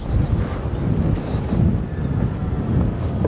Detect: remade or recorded recorded